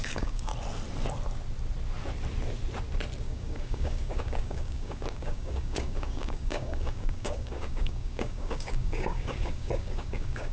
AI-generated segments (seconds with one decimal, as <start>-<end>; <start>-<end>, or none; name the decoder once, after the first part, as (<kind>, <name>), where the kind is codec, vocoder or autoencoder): 0.0-0.5 (codec, DAC); 3.2-10.5